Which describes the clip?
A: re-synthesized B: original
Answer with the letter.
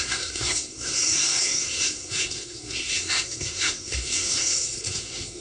A